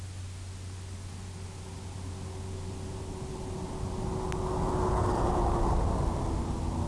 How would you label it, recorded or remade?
recorded